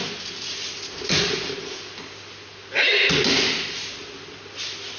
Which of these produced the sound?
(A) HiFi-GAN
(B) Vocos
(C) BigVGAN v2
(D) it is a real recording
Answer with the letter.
D